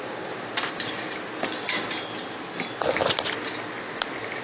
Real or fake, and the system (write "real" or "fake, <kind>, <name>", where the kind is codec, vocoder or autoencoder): real